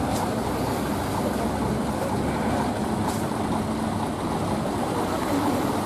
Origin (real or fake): real